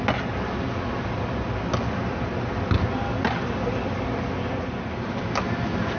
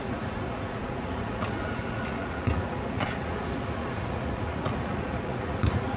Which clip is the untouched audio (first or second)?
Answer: first